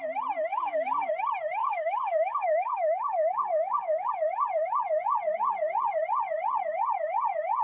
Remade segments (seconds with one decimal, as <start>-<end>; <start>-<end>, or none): 0.5-1.1; 1.6-4.1